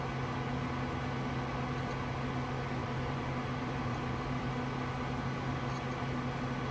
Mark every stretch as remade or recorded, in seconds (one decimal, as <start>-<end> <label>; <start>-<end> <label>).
0.0-2.8 recorded; 2.8-4.4 remade; 4.4-6.7 recorded